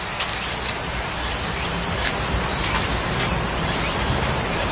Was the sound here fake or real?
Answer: real